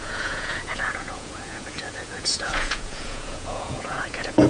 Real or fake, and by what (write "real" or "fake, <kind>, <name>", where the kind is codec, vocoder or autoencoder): fake, vocoder, Vocos